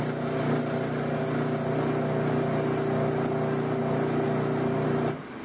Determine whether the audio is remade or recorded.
recorded